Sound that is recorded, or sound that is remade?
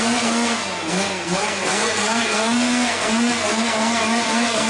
remade